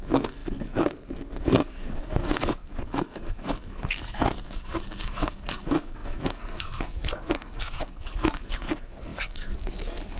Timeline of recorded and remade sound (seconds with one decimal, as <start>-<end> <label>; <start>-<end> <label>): 0.0-10.2 remade